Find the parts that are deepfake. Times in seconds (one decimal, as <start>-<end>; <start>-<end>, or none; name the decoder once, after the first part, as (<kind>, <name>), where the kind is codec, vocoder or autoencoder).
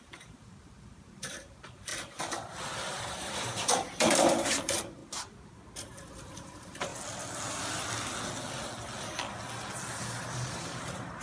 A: 0.0-1.9 (vocoder, BigVGAN v2); 3.0-5.0; 6.4-6.9; 10.5-11.2